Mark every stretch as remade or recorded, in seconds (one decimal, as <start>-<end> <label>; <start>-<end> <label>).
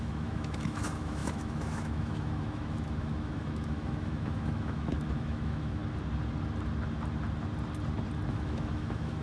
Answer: 0.0-5.8 remade; 5.8-8.3 recorded; 8.3-9.2 remade